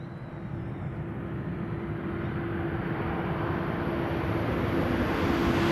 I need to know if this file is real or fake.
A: real